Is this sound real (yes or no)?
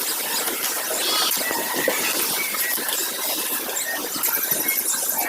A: yes